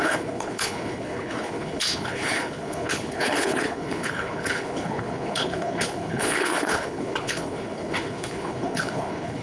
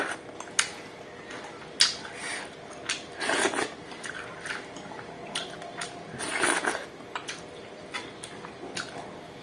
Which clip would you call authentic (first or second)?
second